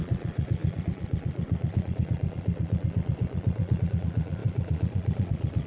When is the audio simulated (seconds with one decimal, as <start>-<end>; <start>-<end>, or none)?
0.0-5.7